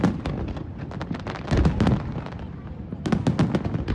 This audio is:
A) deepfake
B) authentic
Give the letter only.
B